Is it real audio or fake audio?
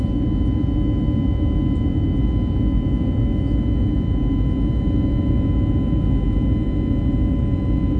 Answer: real